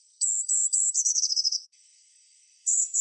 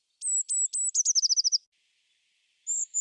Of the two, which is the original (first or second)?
second